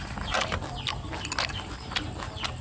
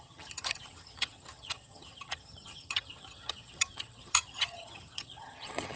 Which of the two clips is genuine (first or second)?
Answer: first